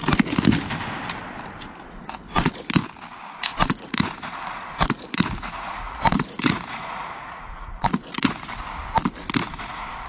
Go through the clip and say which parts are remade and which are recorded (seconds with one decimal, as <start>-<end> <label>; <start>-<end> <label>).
0.0-1.9 recorded; 1.9-2.8 remade; 2.8-3.4 recorded; 3.4-8.4 remade; 8.4-9.5 recorded; 9.5-10.1 remade